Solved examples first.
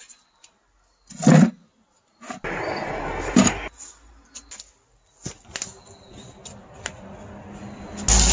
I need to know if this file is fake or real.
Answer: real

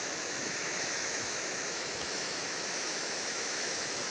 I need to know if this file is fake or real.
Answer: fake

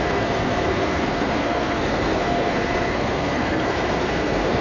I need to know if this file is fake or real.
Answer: fake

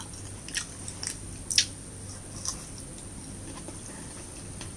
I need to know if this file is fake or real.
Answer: real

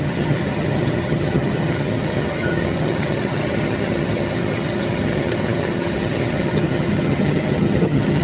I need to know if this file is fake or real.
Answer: fake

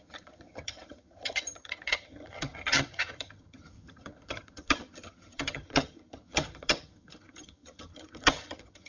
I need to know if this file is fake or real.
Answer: fake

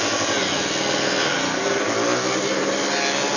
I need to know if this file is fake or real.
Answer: real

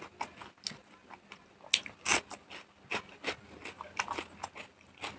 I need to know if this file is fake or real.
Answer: real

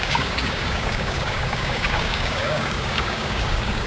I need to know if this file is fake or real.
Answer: fake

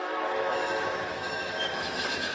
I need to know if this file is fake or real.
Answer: fake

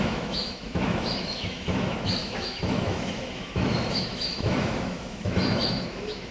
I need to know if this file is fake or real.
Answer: fake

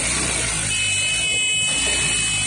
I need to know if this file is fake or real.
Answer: real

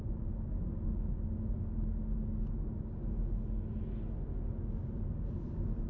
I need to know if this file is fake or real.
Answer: real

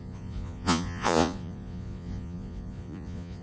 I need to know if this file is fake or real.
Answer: fake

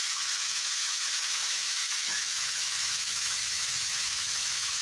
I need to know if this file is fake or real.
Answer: fake